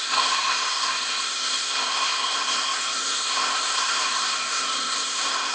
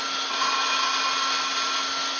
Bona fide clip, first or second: second